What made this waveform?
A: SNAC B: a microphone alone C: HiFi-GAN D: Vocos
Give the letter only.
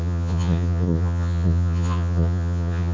D